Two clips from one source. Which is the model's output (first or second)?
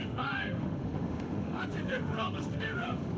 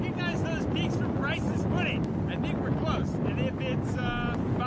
first